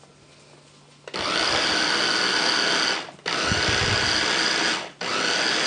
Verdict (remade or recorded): recorded